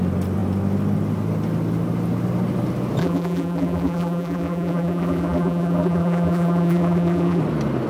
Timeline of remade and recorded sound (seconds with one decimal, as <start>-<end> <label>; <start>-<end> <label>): 0.0-3.0 recorded; 3.0-7.4 remade; 7.4-7.9 recorded